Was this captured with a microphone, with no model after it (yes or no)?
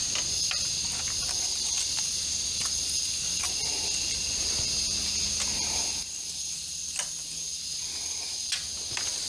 yes